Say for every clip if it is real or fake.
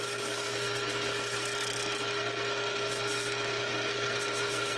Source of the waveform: fake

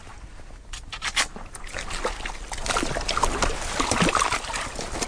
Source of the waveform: real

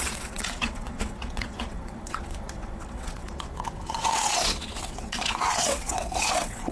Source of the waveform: fake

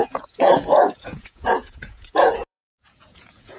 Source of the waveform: fake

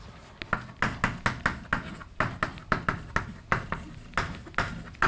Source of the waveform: real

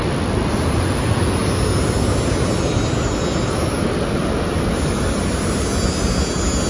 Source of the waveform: real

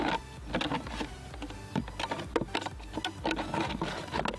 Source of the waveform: real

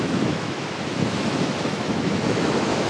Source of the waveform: fake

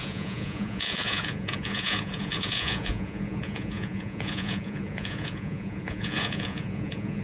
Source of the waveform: fake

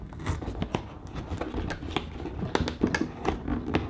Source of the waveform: real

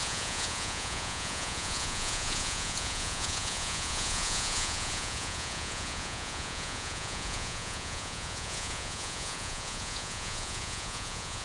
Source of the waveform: fake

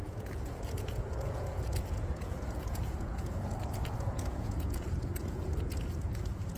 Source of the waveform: fake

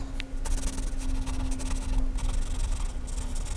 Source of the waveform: real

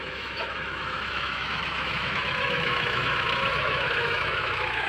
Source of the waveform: fake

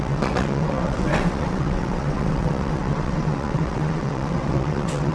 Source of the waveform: fake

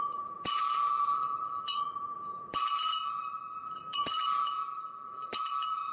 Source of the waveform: fake